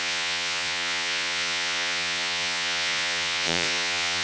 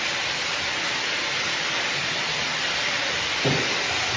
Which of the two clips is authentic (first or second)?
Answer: second